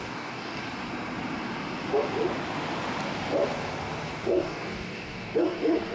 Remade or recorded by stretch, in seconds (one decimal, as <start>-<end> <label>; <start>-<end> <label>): 0.0-0.6 remade; 0.6-4.1 recorded; 4.1-5.9 remade